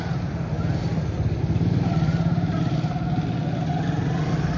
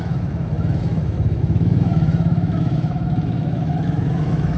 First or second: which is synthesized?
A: second